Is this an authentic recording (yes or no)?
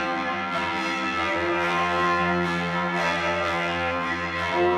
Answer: no